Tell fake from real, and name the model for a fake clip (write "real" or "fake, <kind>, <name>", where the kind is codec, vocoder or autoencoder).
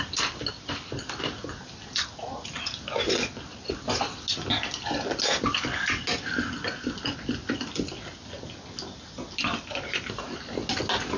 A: real